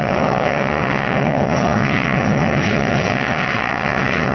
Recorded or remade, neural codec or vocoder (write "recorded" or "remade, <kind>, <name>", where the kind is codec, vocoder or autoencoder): remade, vocoder, WaveNeXt